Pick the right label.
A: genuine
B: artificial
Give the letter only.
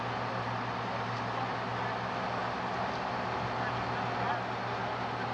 A